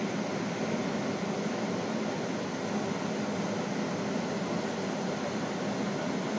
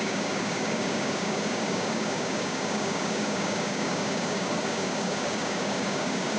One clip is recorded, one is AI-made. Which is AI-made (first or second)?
second